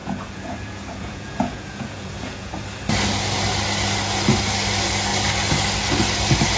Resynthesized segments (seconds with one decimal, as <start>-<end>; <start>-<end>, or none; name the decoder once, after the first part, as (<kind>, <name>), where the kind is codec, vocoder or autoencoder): 0.0-2.5 (vocoder, Vocos)

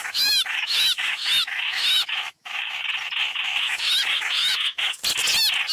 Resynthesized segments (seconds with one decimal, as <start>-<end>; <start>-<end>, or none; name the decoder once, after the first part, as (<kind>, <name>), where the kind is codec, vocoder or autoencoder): 0.0-2.7 (autoencoder, DAC-VAE); 3.3-5.0

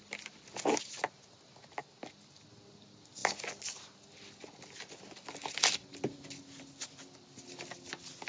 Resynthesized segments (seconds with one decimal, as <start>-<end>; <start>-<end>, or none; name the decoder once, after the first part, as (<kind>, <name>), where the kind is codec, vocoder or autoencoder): none

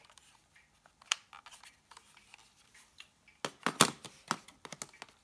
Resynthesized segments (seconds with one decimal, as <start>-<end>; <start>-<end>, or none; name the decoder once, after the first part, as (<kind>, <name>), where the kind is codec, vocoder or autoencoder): none